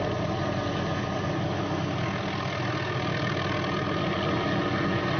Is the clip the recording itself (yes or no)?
yes